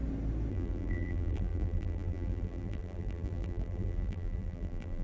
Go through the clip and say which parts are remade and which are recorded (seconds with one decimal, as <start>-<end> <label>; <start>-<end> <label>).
0.0-0.5 recorded; 0.5-5.0 remade